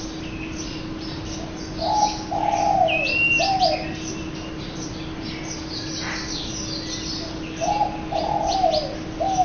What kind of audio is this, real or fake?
real